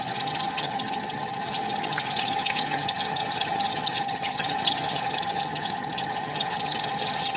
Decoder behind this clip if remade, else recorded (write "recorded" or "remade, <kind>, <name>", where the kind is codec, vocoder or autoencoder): remade, vocoder, HiFi-GAN